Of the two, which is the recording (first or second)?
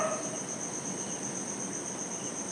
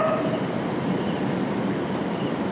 first